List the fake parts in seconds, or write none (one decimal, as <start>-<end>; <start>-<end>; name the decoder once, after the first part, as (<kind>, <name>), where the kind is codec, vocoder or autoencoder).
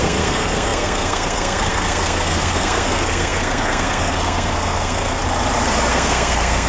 0.0-5.2 (codec, SNAC); 5.9-6.7